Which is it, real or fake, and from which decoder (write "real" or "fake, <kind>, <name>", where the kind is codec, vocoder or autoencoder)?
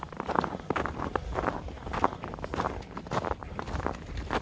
real